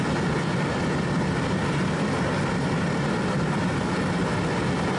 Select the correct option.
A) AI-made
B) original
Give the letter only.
B